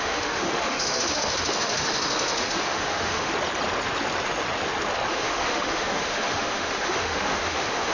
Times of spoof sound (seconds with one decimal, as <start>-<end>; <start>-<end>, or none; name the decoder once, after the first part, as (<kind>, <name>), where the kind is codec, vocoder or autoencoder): 0.0-3.3 (autoencoder, DAC-VAE); 5.1-7.9